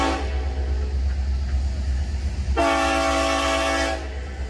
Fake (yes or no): no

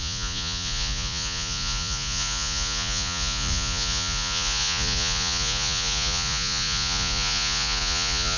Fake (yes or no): yes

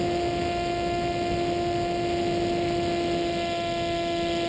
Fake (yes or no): no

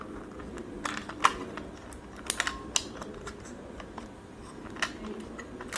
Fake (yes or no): no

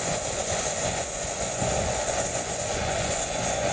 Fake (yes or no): yes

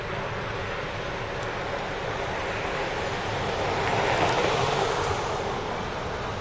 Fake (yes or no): no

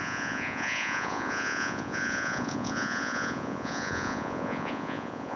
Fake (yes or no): yes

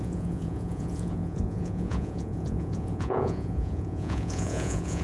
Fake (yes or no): yes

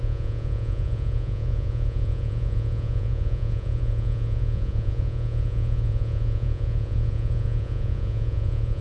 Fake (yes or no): yes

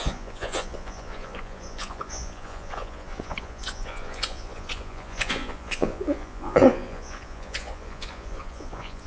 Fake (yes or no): yes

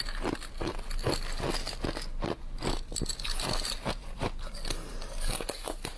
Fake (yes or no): no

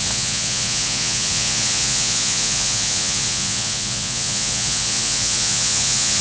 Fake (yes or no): yes